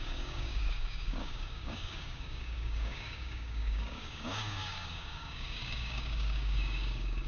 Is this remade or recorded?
remade